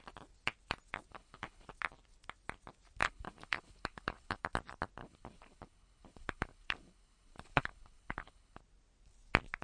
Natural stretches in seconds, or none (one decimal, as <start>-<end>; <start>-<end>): 0.0-1.1; 1.7-3.0; 4.4-5.0; 8.6-9.6